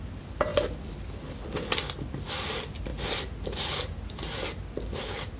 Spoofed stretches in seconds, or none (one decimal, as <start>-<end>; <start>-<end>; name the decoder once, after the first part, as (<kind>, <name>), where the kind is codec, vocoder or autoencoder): none